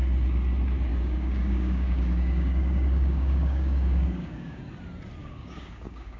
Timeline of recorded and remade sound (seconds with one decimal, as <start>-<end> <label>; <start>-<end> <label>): 0.0-0.9 recorded; 0.9-4.6 remade; 4.6-5.2 recorded; 5.2-6.2 remade

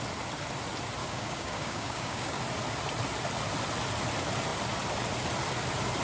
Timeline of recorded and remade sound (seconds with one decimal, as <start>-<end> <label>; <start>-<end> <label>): 0.0-1.0 recorded; 1.0-2.4 remade; 2.4-6.0 recorded